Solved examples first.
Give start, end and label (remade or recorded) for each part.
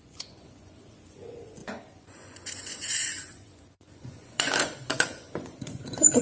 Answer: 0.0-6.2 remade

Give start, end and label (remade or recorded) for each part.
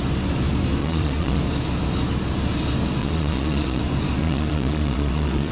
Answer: 0.0-0.8 recorded; 0.8-1.4 remade; 1.4-3.0 recorded; 3.0-3.8 remade; 3.8-4.2 recorded; 4.2-5.5 remade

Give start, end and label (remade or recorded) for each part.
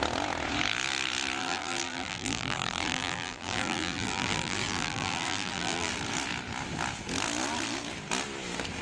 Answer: 0.0-1.4 recorded; 1.4-5.9 remade; 5.9-8.8 recorded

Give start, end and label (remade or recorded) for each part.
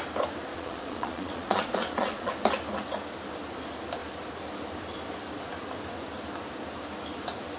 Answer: 0.0-0.5 recorded; 0.5-2.3 remade; 2.3-7.6 recorded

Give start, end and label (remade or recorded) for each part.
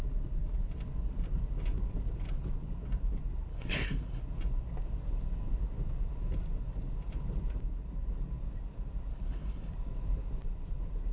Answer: 0.0-3.5 recorded; 3.5-4.2 remade; 4.2-9.1 recorded; 9.1-9.7 remade; 9.7-11.1 recorded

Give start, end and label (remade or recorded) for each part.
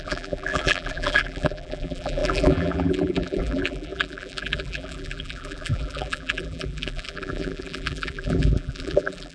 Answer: 0.0-9.3 remade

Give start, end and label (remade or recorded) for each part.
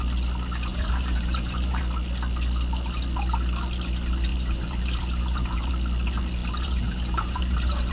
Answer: 0.0-0.7 recorded; 0.7-1.8 remade; 1.8-4.3 recorded; 4.3-5.7 remade; 5.7-6.4 recorded; 6.4-7.9 remade